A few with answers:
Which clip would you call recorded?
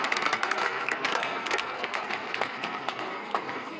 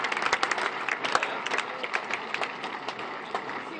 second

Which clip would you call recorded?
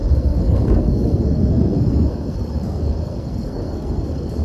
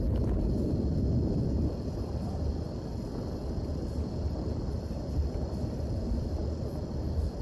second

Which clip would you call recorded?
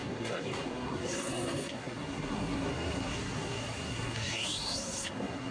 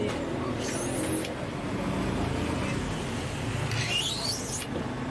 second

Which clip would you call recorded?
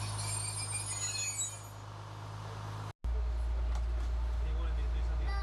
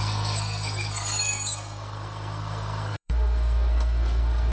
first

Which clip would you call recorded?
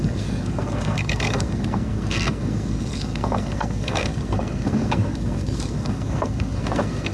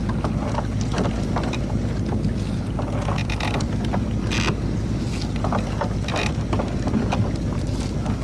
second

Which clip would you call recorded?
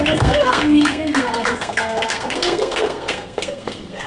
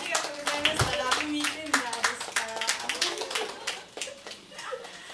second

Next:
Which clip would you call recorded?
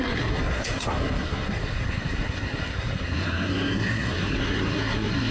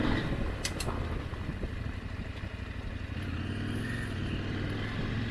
second